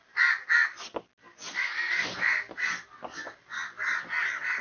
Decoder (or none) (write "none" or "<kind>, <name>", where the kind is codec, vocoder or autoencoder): none